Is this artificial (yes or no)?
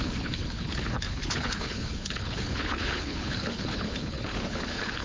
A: yes